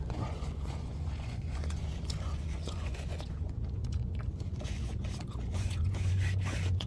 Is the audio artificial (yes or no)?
yes